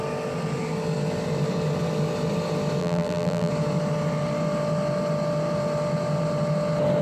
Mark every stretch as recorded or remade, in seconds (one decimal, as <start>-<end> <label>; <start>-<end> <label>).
0.0-2.8 recorded; 2.8-3.5 remade; 3.5-7.0 recorded